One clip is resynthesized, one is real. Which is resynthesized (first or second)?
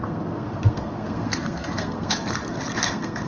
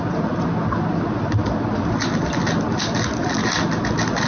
first